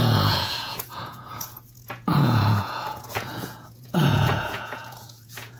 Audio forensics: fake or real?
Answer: fake